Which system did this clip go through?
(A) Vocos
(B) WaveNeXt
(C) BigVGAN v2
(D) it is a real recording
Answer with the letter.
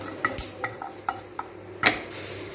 D